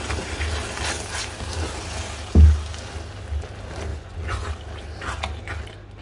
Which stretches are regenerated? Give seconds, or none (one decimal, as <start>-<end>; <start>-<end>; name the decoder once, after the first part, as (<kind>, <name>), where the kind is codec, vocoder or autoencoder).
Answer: 3.9-4.5 (vocoder, Vocos)